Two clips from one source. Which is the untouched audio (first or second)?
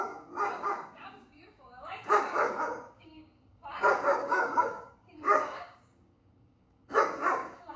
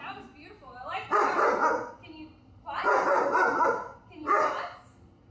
second